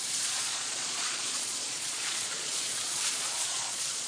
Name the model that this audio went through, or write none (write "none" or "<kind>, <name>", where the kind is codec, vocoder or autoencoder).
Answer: vocoder, Vocos